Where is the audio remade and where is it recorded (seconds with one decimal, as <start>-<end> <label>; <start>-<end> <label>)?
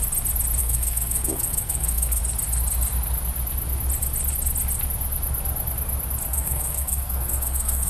0.0-0.6 recorded; 0.6-2.2 remade; 2.2-6.3 recorded; 6.3-7.9 remade